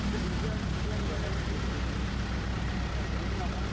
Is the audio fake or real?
real